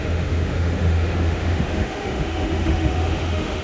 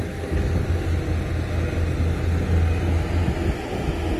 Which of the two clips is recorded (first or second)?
second